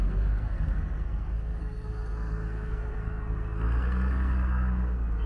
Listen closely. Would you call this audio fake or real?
fake